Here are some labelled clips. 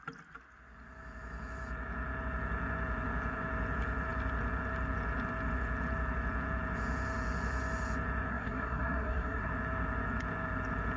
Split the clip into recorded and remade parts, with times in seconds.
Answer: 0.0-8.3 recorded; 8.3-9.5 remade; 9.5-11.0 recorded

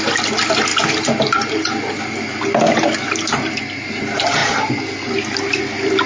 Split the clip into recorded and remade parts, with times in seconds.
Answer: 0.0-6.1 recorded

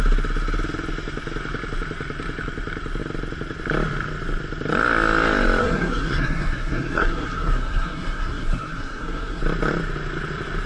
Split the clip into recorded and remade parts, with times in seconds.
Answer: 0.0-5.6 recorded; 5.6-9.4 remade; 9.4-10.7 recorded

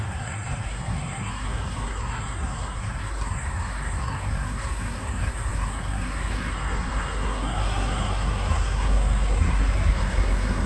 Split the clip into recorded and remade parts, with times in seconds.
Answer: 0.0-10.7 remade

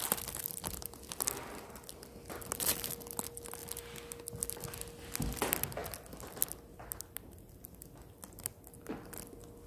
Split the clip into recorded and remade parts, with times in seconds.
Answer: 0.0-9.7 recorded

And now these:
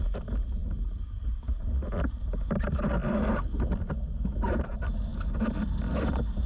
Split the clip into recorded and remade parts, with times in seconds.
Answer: 0.0-6.5 recorded

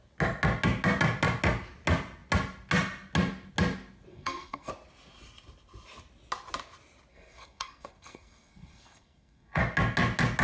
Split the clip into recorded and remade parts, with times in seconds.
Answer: 0.0-4.1 recorded; 4.1-4.7 remade; 4.7-7.1 recorded; 7.1-9.6 remade; 9.6-10.4 recorded

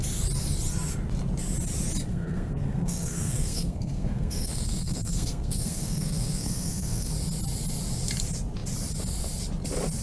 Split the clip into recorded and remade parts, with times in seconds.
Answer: 0.0-2.1 recorded; 2.1-7.1 remade; 7.1-10.0 recorded